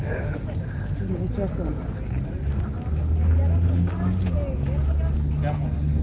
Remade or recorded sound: recorded